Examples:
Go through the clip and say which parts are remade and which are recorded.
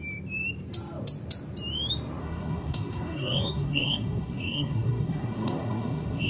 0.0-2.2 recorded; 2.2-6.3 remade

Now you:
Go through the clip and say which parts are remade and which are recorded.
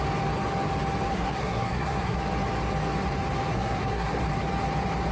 0.0-1.1 recorded; 1.1-2.2 remade; 2.2-3.5 recorded; 3.5-4.2 remade; 4.2-5.1 recorded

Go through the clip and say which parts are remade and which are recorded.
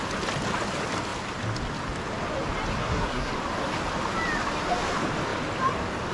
0.0-2.8 recorded; 2.8-3.3 remade; 3.3-6.1 recorded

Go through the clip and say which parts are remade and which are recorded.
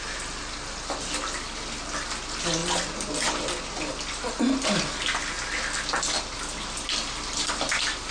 0.0-8.1 recorded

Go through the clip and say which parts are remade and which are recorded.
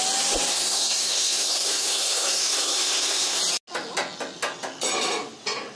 0.0-0.5 recorded; 0.5-3.4 remade; 3.4-5.8 recorded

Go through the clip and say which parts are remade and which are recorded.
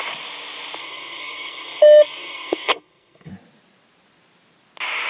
0.0-0.8 recorded; 0.8-3.3 remade; 3.3-5.1 recorded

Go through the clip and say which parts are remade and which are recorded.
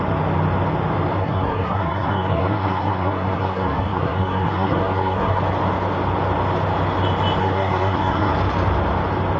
0.0-1.2 recorded; 1.2-5.4 remade; 5.4-7.4 recorded; 7.4-8.3 remade; 8.3-9.4 recorded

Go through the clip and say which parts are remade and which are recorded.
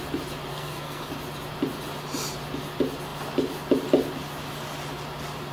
0.0-0.5 recorded; 0.5-1.1 remade; 1.1-5.5 recorded